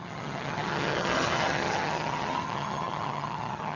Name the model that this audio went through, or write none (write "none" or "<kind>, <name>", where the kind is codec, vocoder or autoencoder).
vocoder, HiFi-GAN